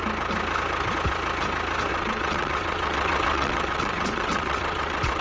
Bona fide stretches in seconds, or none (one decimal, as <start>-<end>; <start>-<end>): 0.0-1.9